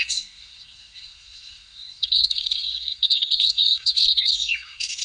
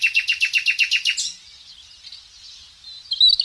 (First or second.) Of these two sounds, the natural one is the second